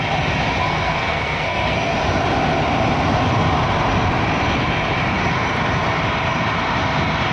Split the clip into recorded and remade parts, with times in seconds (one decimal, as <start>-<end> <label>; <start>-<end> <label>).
0.0-0.6 recorded; 0.6-1.9 remade; 1.9-7.3 recorded